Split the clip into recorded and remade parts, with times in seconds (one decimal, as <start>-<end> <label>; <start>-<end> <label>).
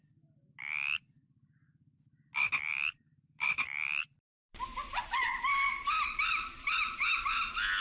0.0-2.7 recorded; 2.7-6.7 remade; 6.7-7.8 recorded